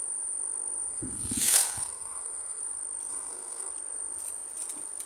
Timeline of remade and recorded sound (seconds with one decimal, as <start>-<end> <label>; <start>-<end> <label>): 0.0-0.9 recorded; 0.9-2.6 remade; 2.6-3.1 recorded; 3.1-3.7 remade; 3.7-5.1 recorded